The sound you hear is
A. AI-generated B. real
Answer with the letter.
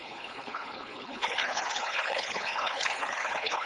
A